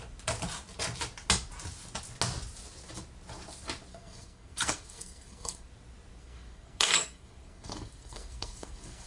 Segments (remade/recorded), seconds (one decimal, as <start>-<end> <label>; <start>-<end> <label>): 0.0-3.9 recorded; 3.9-5.7 remade; 5.7-6.2 recorded; 6.2-9.1 remade